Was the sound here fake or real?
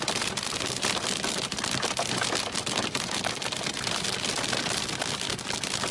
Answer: real